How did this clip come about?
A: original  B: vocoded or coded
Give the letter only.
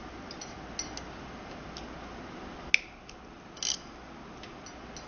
A